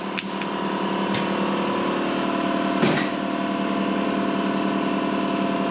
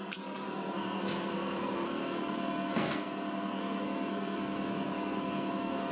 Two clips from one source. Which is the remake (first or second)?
second